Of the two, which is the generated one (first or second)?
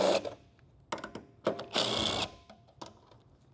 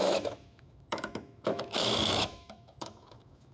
second